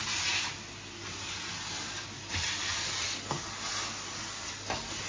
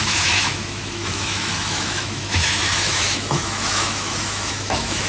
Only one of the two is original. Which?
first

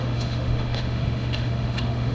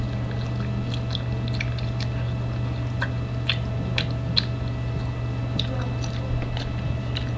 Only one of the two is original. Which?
second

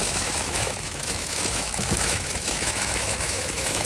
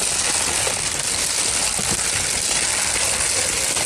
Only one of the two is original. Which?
second